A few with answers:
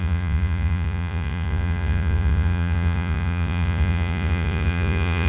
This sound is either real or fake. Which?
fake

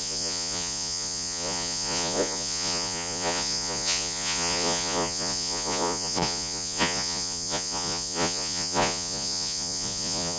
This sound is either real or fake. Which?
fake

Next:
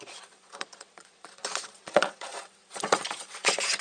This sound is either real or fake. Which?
fake